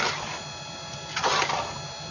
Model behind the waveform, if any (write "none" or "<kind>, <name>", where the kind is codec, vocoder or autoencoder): none